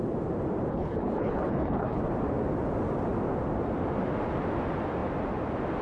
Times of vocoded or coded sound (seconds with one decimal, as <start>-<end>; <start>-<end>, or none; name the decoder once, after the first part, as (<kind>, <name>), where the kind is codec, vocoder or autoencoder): 0.7-2.0 (codec, HILCodec)